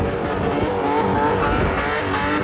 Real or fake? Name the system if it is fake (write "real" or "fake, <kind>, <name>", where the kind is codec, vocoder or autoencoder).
real